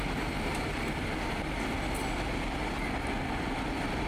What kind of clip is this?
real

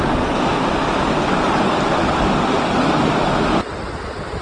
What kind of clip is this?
real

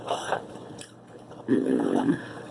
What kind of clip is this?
fake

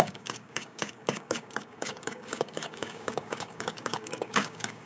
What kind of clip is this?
fake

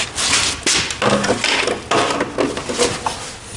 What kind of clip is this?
real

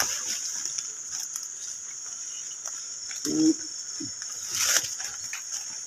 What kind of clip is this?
real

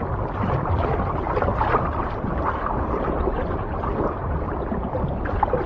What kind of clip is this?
real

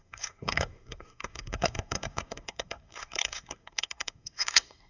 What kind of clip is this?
fake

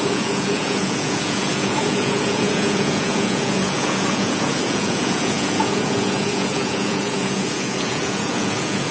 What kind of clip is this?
fake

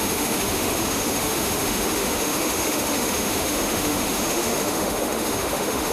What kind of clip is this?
fake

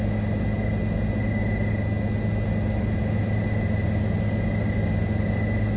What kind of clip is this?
real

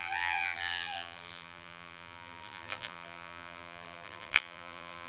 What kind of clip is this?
fake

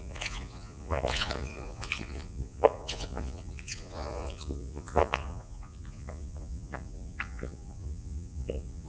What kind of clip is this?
fake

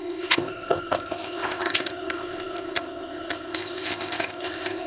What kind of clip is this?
fake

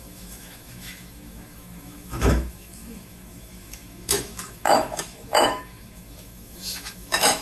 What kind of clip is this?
fake